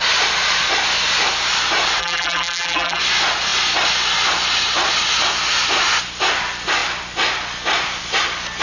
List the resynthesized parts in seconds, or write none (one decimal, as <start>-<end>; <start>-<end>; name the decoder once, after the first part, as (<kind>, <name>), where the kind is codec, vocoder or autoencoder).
2.0-3.0 (vocoder, BigVGAN v2)